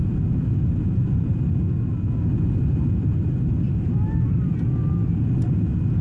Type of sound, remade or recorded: recorded